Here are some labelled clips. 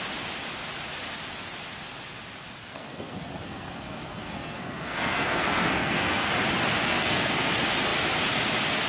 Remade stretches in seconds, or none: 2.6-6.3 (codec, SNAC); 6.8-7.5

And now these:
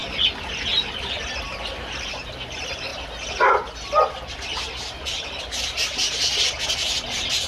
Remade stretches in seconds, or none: none

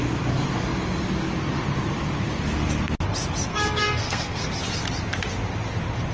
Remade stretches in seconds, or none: 3.5-4.5 (codec, SNAC)

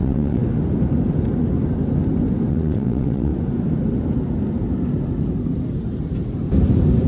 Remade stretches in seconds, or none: 0.0-0.4 (vocoder, WaveNeXt); 2.5-3.3

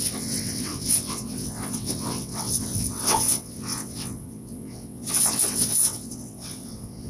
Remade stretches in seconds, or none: 0.0-7.1 (vocoder, WaveNeXt)